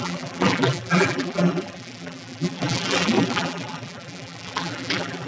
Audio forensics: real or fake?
fake